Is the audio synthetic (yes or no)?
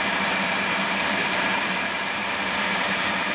yes